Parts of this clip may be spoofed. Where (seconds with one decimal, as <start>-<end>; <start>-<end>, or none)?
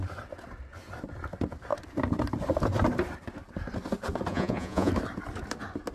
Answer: 4.3-4.9